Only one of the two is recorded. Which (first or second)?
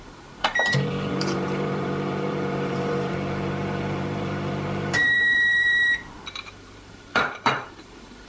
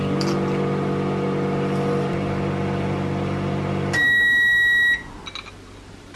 second